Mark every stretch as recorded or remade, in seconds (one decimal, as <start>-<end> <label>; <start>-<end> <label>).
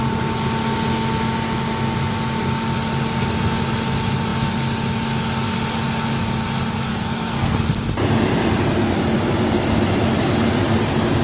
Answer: 0.0-6.9 recorded; 6.9-7.6 remade; 7.6-11.2 recorded